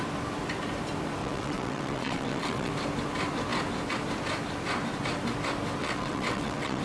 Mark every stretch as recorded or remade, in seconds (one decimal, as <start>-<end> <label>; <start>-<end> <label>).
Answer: 0.0-1.2 recorded; 1.2-2.7 remade; 2.7-5.8 recorded; 5.8-6.8 remade